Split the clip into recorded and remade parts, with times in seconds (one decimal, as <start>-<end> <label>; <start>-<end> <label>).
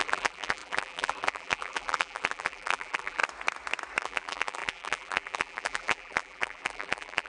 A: 0.0-3.2 remade; 3.2-4.0 recorded; 4.0-7.3 remade